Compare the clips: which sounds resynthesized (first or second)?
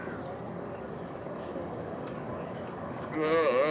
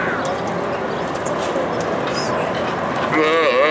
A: first